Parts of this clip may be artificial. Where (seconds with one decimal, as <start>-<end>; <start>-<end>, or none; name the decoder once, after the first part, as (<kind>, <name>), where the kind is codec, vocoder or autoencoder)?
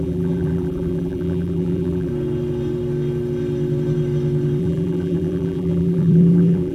0.0-2.1 (vocoder, BigVGAN v2); 4.6-6.7